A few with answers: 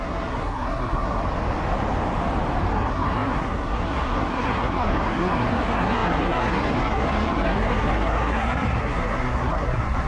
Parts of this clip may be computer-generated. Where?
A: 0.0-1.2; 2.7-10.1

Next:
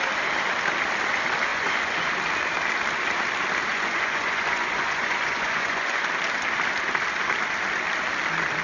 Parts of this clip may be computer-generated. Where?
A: 1.5-2.1; 3.7-6.1

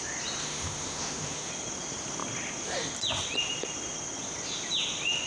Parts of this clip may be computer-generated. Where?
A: 0.4-1.5

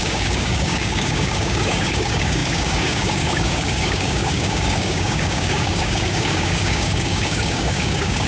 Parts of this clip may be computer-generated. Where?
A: 0.0-8.3

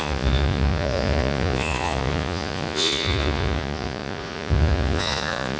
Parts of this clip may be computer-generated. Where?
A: 0.0-5.6

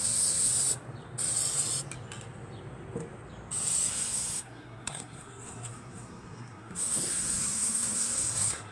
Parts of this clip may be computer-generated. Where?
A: 0.0-0.5; 3.9-8.7